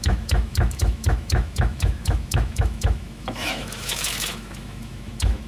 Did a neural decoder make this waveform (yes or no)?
yes